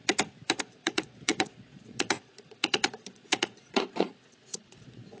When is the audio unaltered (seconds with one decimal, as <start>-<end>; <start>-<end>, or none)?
0.0-0.6